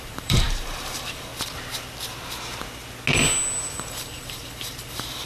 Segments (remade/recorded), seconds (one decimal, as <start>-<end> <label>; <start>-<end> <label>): 0.0-1.3 remade; 1.3-3.7 recorded; 3.7-5.3 remade